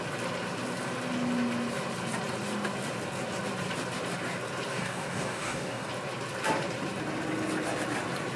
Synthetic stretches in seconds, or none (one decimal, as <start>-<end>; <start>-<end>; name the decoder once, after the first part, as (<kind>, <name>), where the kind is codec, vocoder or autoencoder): 4.7-5.9 (codec, DAC)